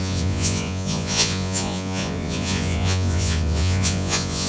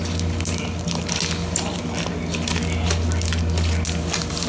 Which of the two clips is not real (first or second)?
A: first